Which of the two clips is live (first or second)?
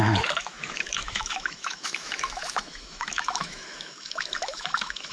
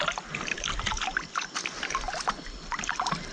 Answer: second